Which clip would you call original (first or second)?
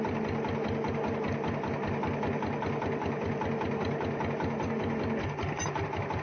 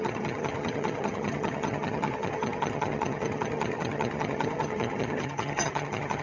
first